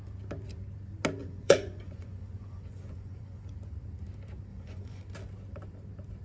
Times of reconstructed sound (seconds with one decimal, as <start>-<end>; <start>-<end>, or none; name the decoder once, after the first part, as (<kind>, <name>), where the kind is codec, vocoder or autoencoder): 1.2-3.5 (vocoder, Vocos); 4.5-5.0